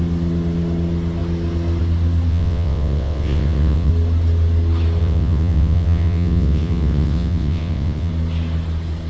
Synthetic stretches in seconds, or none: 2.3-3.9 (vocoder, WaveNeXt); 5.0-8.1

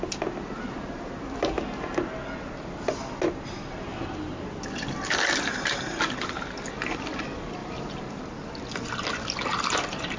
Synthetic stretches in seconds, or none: 7.6-8.2 (vocoder, BigVGAN v2)

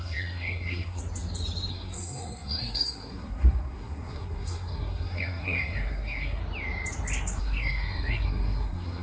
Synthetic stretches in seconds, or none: 0.0-1.0 (codec, SNAC); 1.7-6.4; 7.4-9.0